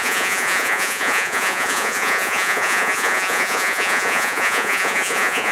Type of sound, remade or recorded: remade